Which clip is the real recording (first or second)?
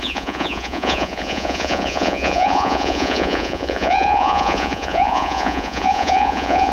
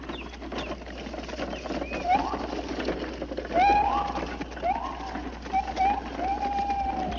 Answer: second